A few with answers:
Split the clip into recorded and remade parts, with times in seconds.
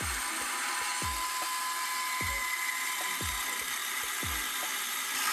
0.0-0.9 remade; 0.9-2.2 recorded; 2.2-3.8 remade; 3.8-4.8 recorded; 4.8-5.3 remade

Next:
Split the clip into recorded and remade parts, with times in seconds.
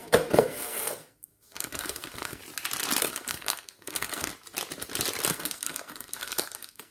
0.0-2.4 remade; 2.4-3.0 recorded; 3.0-4.3 remade; 4.3-5.3 recorded; 5.3-6.9 remade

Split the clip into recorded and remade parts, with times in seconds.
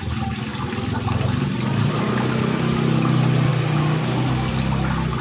0.0-5.2 recorded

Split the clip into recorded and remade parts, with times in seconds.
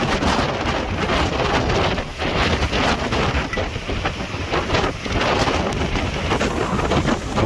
0.0-7.5 recorded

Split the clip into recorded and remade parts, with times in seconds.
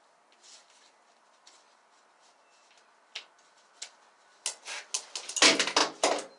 0.0-6.4 recorded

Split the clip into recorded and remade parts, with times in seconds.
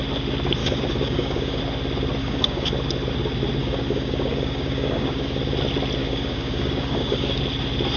0.0-0.6 recorded; 0.6-1.6 remade; 1.6-2.2 recorded; 2.2-2.7 remade; 2.7-3.6 recorded; 3.6-5.4 remade; 5.4-6.0 recorded; 6.0-7.4 remade; 7.4-8.0 recorded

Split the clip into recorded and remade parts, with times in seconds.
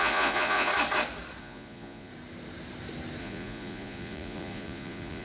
0.0-0.7 remade; 0.7-1.4 recorded; 1.4-2.1 remade; 2.1-3.2 recorded; 3.2-5.2 remade